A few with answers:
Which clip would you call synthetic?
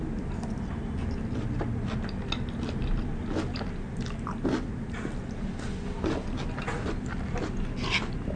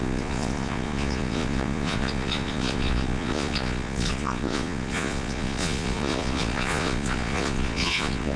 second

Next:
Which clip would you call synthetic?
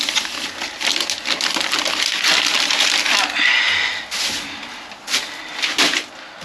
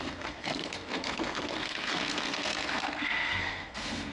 second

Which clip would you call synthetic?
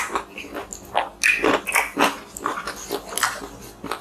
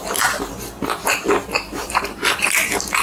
second